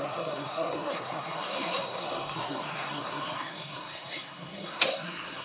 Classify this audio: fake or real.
fake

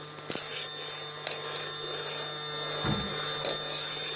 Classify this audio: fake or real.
real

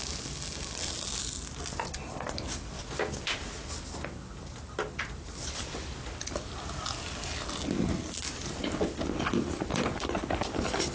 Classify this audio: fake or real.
real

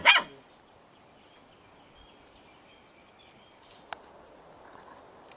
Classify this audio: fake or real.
real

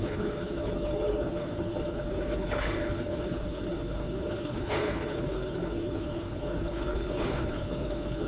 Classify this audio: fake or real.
fake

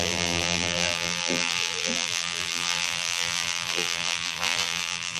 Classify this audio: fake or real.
fake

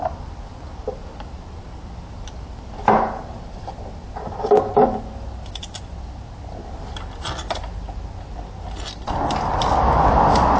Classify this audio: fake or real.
real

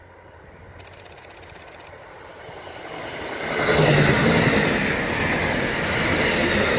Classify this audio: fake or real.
real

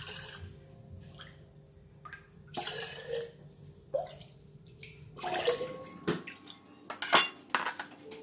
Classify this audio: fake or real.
real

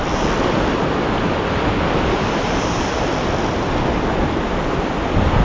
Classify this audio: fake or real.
real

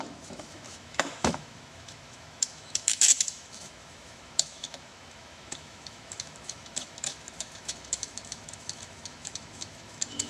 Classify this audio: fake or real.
fake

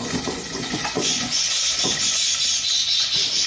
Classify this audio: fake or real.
fake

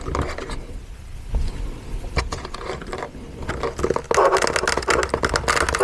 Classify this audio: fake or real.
real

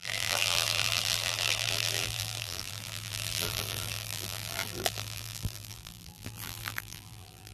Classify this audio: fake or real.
fake